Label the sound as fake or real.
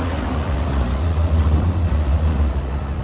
fake